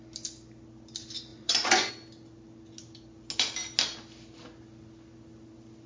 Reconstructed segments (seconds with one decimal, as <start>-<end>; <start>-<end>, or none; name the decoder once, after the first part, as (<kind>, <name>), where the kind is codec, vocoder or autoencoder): 1.3-1.9 (vocoder, Vocos)